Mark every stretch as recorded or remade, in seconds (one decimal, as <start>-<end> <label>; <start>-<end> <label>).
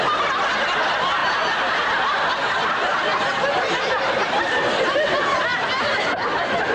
0.0-6.7 recorded